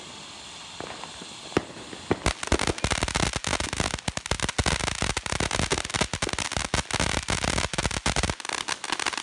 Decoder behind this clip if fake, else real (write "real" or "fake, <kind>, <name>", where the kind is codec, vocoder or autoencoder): real